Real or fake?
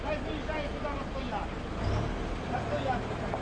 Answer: real